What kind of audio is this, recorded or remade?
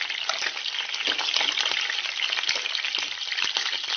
recorded